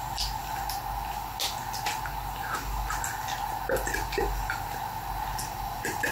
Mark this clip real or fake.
real